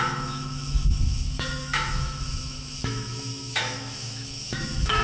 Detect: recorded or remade remade